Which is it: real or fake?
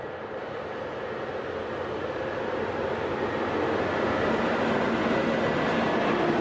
real